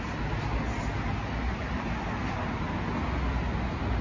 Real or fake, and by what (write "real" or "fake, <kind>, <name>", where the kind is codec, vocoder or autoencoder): real